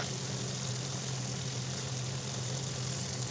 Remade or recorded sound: recorded